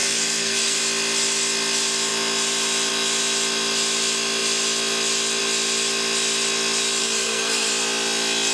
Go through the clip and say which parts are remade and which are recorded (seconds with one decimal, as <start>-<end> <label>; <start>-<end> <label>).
0.0-0.8 remade; 0.8-7.0 recorded; 7.0-7.7 remade; 7.7-8.5 recorded